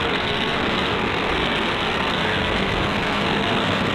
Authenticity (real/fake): fake